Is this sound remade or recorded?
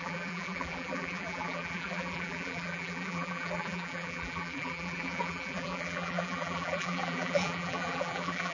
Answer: remade